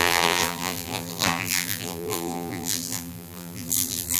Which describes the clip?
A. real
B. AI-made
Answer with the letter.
B